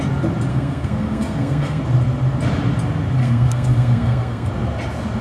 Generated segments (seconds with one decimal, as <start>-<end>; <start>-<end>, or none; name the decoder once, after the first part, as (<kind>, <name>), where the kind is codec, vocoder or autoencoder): 0.5-1.8 (codec, SNAC); 3.2-4.5